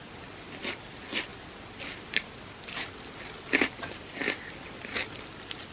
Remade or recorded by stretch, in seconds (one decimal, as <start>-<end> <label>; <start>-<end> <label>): 0.0-5.7 recorded